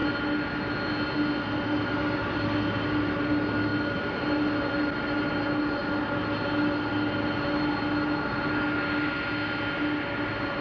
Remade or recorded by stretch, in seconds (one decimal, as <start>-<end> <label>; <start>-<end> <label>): 0.0-10.6 recorded